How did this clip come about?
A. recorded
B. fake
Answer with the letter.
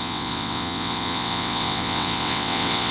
B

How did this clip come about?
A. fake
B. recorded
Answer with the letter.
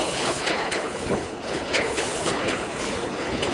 A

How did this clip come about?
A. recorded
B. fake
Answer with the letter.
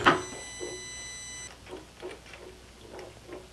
A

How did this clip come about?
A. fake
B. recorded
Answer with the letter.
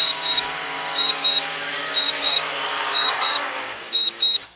A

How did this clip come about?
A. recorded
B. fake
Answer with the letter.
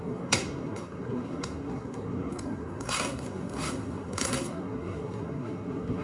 B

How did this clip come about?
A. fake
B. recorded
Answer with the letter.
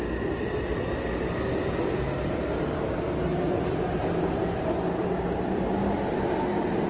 B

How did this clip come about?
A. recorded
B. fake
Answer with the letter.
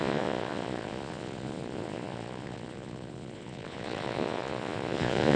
B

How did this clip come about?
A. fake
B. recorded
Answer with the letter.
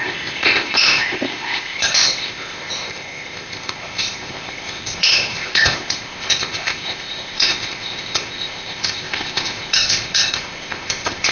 A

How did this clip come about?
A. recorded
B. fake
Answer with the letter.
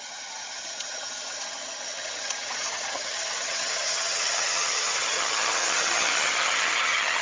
B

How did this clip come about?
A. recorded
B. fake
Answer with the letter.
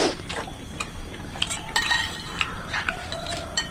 B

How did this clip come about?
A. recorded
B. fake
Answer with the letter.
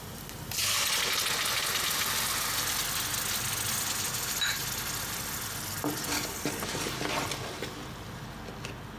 A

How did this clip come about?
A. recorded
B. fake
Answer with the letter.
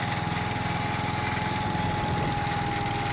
A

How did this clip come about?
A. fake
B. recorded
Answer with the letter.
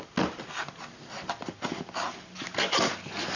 B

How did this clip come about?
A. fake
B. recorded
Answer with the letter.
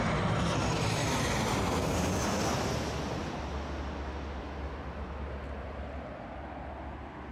B